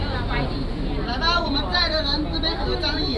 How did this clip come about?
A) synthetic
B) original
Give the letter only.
B